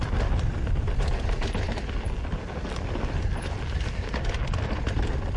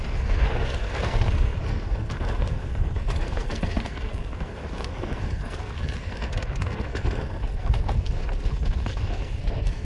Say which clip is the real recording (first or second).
first